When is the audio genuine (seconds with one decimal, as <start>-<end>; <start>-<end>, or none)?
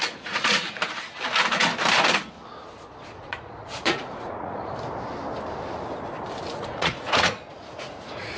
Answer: 0.8-3.2; 4.7-6.5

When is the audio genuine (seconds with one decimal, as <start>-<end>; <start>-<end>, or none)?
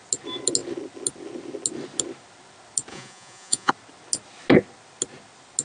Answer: 0.0-2.9; 3.7-5.6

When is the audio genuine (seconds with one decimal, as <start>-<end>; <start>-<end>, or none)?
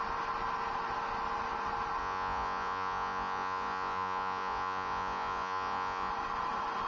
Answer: 0.0-2.0; 6.1-6.9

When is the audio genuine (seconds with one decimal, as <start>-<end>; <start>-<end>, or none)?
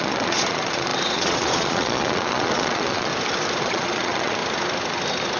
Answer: 3.1-3.6; 4.4-5.4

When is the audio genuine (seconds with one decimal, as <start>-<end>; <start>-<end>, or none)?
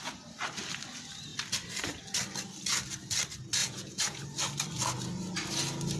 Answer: 0.0-3.6; 4.2-6.0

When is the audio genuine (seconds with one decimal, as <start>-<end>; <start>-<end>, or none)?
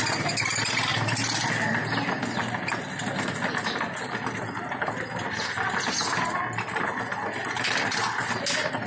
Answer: 0.0-8.9